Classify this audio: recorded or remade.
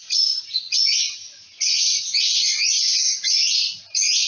remade